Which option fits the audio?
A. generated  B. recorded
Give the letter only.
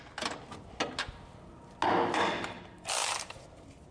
B